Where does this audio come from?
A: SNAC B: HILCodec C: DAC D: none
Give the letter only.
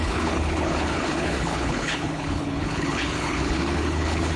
B